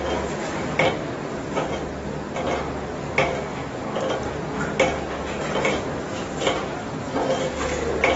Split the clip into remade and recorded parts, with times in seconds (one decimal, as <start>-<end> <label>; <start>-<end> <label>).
0.0-8.2 recorded